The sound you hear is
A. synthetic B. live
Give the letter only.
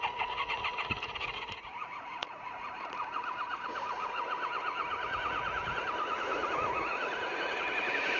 A